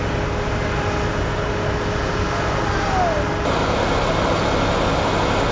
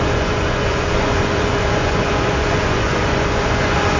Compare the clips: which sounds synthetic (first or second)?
second